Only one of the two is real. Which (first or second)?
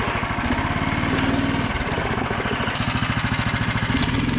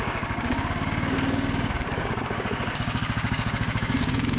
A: first